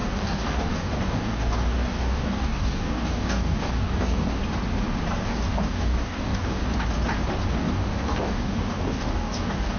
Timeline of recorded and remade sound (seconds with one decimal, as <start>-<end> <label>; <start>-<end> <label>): 0.0-4.4 remade; 4.4-5.2 recorded; 5.2-6.6 remade; 6.6-7.5 recorded; 7.5-9.8 remade